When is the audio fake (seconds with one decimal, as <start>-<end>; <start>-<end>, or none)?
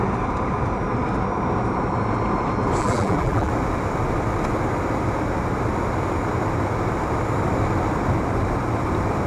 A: 2.8-3.5